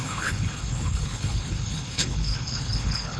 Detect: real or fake fake